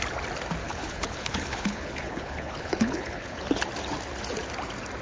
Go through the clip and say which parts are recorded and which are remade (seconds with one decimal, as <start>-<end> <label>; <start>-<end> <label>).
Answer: 0.0-0.6 recorded; 0.6-3.6 remade; 3.6-5.0 recorded